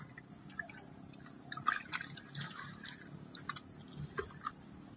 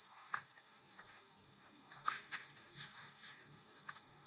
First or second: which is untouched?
first